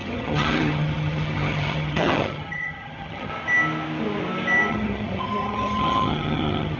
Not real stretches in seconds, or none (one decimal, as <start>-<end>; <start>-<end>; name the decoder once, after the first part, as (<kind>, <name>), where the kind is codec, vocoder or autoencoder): 0.0-3.3 (vocoder, HiFi-GAN); 4.7-6.8